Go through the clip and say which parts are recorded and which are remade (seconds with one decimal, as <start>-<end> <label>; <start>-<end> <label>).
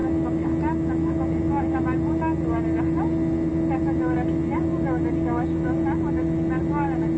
0.0-7.2 recorded